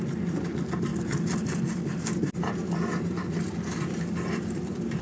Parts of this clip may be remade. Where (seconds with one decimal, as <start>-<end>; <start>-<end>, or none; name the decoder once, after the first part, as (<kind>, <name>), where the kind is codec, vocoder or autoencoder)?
none